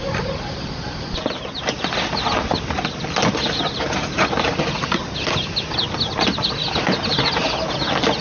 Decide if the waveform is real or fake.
real